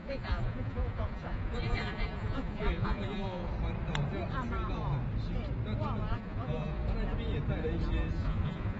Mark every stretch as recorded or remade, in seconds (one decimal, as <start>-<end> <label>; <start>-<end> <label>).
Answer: 0.0-3.5 remade; 3.5-6.1 recorded; 6.1-6.8 remade; 6.8-8.1 recorded; 8.1-8.8 remade